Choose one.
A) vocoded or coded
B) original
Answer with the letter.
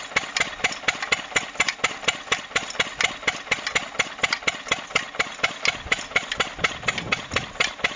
B